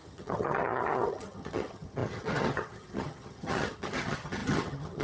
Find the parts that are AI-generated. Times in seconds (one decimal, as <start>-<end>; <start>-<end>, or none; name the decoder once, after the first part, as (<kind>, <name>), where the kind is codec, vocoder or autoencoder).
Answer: 0.0-5.0 (vocoder, HiFi-GAN)